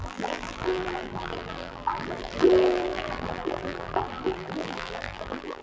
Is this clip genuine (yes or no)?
no